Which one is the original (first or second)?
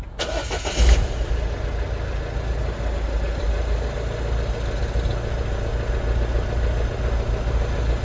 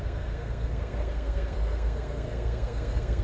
first